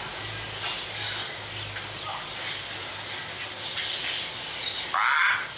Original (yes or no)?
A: yes